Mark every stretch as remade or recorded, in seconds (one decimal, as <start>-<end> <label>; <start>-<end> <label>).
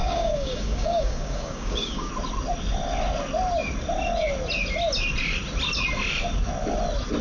0.0-2.1 remade; 2.1-7.2 recorded